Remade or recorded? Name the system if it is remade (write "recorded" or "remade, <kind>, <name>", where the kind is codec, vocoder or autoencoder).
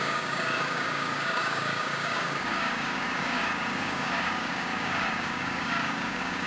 remade, codec, DAC